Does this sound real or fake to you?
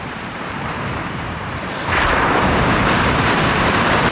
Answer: fake